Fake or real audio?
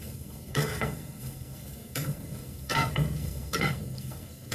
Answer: fake